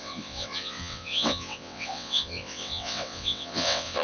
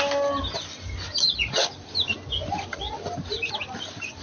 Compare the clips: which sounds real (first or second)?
second